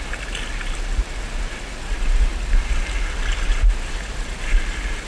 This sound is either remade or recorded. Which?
recorded